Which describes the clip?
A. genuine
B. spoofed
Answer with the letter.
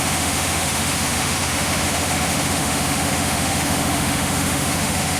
B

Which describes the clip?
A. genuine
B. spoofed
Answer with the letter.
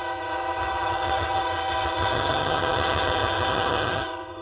B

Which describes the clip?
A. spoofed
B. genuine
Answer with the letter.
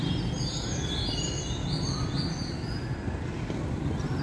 B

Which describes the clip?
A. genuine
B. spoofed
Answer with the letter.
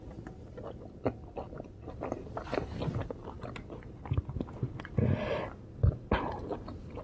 A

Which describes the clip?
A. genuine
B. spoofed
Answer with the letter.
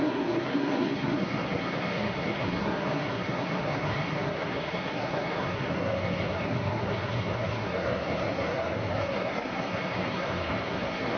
B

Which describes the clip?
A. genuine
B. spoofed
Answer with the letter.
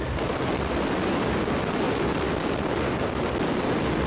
A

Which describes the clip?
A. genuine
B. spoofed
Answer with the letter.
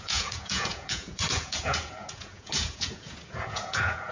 B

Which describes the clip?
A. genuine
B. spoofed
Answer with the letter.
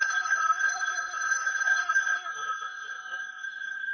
B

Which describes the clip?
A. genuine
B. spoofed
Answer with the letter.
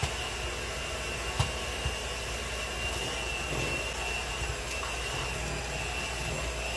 A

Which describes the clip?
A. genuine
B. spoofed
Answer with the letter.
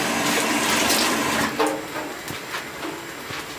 A